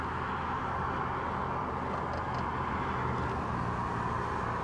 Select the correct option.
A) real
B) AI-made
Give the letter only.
A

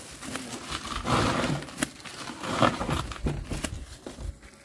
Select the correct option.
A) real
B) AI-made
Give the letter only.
A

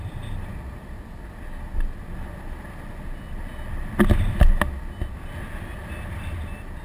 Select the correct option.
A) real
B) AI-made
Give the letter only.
A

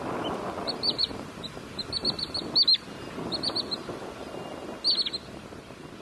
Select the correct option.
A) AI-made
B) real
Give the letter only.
B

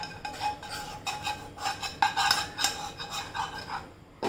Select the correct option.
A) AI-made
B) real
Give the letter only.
B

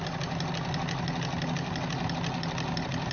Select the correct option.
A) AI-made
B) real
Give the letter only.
B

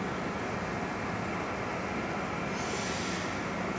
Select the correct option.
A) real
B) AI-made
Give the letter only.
A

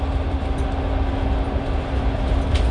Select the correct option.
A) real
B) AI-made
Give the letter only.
A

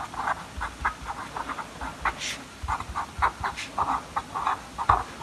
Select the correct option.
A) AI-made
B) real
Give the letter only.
B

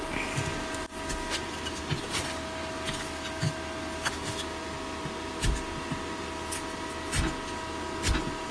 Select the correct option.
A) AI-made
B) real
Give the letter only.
B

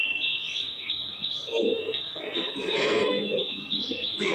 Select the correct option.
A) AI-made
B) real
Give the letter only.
A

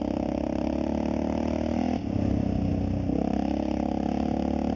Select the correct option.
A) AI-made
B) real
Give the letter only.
B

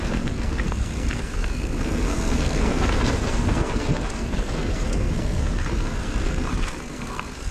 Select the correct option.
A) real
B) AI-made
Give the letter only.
B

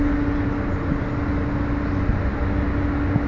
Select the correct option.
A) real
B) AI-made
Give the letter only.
A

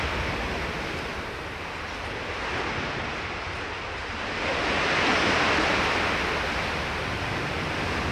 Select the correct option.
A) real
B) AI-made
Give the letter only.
A